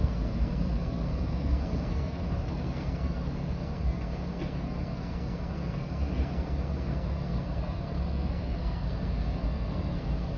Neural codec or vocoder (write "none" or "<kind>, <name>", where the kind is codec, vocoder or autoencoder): codec, SNAC